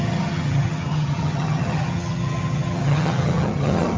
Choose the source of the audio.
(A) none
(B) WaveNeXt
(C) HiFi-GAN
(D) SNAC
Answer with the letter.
C